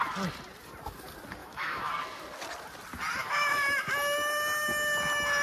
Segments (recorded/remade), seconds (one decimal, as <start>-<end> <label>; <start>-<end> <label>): 0.0-1.4 recorded; 1.4-1.9 remade; 1.9-3.2 recorded; 3.2-3.8 remade; 3.8-5.4 recorded